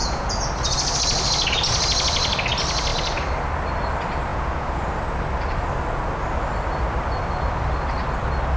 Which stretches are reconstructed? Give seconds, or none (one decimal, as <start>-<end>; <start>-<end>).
0.0-0.5; 4.3-4.9